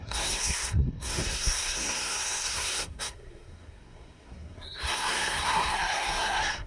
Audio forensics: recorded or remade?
remade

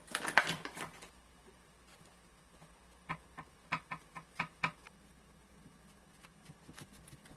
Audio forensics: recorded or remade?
recorded